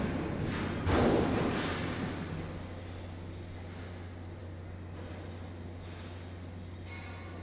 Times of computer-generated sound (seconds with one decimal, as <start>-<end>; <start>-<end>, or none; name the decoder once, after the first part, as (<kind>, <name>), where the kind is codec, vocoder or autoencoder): none